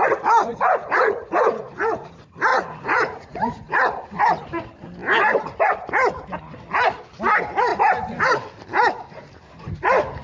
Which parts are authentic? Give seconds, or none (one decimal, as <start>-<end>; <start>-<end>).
0.0-0.4; 2.1-2.5; 4.2-10.2